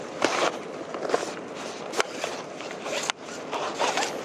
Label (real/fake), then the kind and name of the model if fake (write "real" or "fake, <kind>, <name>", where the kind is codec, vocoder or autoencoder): real